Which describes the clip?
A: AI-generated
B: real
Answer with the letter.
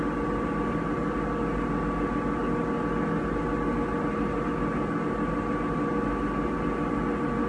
B